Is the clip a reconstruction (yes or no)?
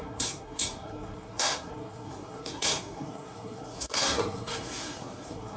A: yes